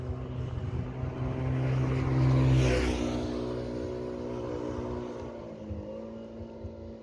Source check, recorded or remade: recorded